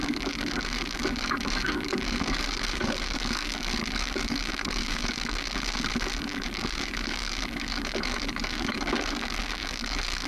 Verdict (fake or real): fake